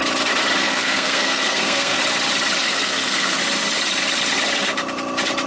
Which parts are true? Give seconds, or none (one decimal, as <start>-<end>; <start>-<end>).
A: 0.0-0.6; 2.0-2.6; 3.4-5.5